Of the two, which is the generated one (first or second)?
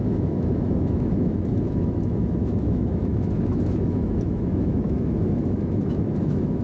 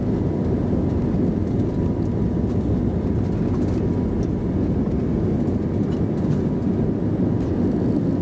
first